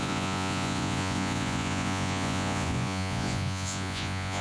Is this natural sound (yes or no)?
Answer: no